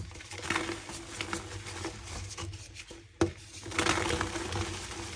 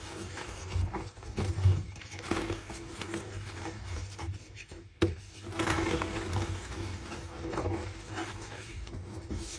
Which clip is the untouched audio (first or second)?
first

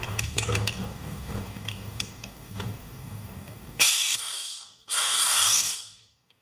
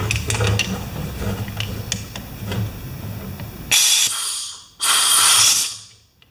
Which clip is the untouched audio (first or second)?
second